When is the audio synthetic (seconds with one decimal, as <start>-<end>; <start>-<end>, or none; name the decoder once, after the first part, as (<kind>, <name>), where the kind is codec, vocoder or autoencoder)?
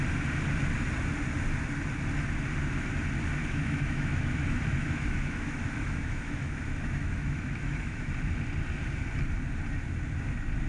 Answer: 3.4-8.1 (autoencoder, DAC-VAE)